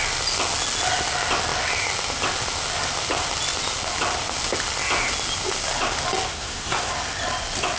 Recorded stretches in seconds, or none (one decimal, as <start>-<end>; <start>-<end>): 0.0-6.3; 6.9-7.8